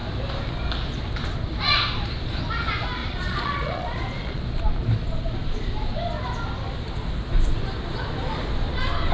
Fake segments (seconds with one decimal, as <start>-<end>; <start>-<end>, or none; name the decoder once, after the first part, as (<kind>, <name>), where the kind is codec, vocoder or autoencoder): 3.0-4.4 (vocoder, Vocos)